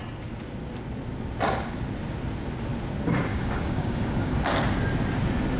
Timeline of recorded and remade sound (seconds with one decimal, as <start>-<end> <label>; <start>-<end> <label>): 0.0-3.3 recorded; 3.3-4.4 remade; 4.4-5.6 recorded